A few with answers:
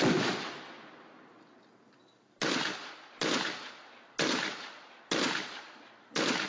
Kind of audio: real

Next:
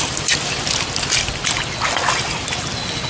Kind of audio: real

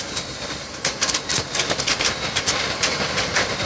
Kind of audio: real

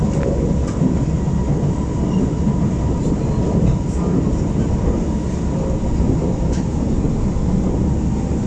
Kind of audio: real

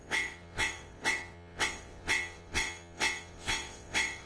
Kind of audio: fake